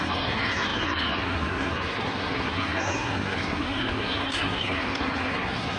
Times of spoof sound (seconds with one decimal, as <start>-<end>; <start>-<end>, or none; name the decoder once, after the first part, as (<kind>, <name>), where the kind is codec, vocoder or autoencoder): 0.0-5.8 (codec, SNAC)